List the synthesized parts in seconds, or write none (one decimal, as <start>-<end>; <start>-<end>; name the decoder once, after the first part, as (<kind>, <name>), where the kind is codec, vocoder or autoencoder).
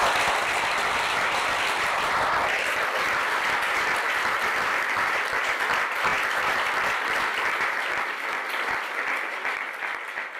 0.4-5.4 (vocoder, BigVGAN v2); 6.1-10.0